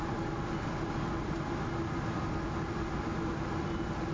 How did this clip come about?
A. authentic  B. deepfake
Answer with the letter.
A